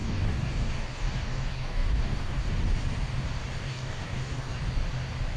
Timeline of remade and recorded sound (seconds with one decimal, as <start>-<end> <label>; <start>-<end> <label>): 0.0-2.5 remade; 2.5-3.6 recorded; 3.6-4.6 remade; 4.6-5.4 recorded